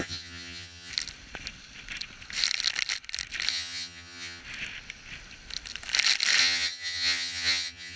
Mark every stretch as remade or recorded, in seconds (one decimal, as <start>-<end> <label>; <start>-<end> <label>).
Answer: 0.0-0.9 remade; 0.9-3.5 recorded; 3.5-4.4 remade; 4.4-6.4 recorded; 6.4-8.0 remade